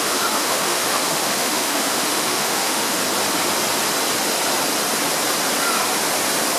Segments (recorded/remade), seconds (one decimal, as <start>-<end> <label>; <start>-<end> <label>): 0.0-3.0 remade; 3.0-6.6 recorded